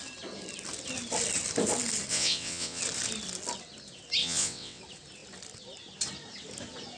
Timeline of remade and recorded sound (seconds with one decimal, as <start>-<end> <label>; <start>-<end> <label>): 0.0-2.1 recorded; 2.1-2.8 remade; 2.8-4.2 recorded; 4.2-4.8 remade; 4.8-7.0 recorded